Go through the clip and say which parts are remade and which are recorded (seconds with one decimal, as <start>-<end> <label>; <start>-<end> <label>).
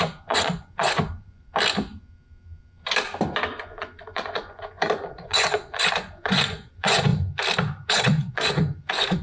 0.0-1.5 remade; 1.5-3.6 recorded; 3.6-7.1 remade; 7.1-7.9 recorded; 7.9-9.2 remade